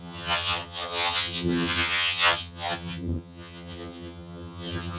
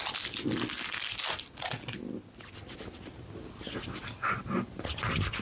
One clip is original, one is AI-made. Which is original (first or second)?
second